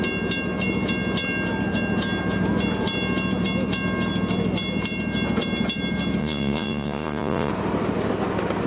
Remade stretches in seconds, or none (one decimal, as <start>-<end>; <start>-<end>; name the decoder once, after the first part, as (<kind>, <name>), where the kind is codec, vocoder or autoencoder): 6.2-7.5 (vocoder, Vocos)